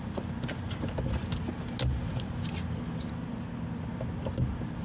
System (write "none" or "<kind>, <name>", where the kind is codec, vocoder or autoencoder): none